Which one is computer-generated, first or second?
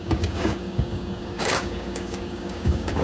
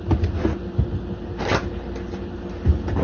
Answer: first